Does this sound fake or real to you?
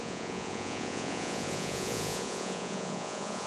fake